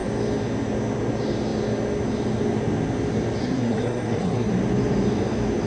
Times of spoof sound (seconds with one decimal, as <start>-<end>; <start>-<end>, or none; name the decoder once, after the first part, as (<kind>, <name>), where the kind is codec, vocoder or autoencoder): 3.4-4.5 (codec, SNAC)